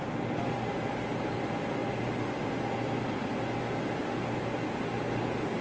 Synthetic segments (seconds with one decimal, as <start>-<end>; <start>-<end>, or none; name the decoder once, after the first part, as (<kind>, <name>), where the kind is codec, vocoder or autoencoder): none